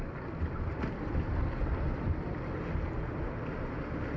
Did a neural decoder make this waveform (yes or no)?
no